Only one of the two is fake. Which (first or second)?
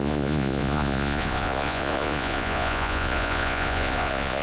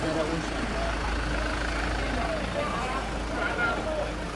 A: first